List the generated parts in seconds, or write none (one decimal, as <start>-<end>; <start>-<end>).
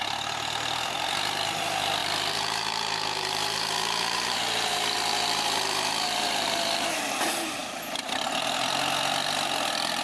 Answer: 2.0-7.0